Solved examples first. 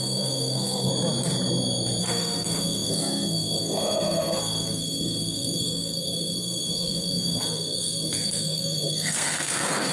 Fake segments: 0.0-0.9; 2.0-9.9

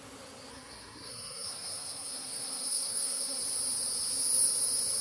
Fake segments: 0.5-3.4

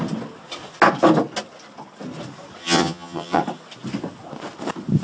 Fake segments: 2.6-3.4

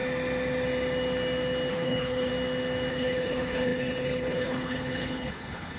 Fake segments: 1.7-2.3; 2.9-5.8

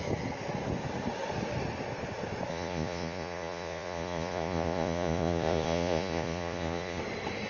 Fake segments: 2.5-7.0

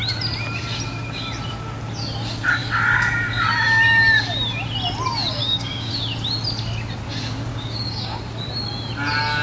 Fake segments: 5.4-5.9; 7.5-8.2

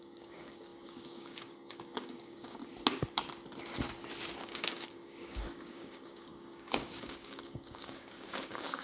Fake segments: 0.0-2.6; 4.4-8.8